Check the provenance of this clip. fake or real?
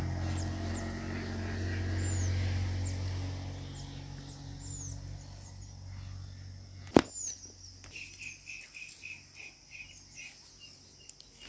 real